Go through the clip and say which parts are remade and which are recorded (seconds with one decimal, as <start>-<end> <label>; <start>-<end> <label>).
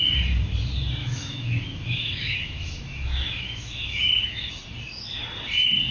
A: 0.0-1.0 recorded; 1.0-4.5 remade; 4.5-5.9 recorded